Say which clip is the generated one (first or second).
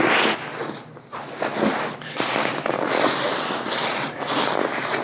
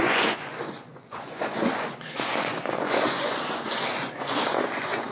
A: second